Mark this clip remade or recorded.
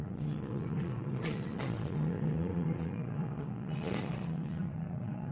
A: remade